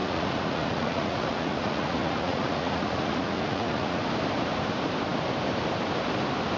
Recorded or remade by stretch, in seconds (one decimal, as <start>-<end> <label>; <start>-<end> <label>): 0.0-4.0 remade; 4.0-6.6 recorded

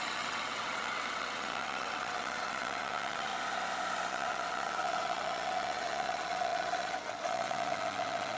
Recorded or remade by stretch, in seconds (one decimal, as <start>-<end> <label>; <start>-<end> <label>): 0.0-3.3 remade; 3.3-4.1 recorded; 4.1-8.4 remade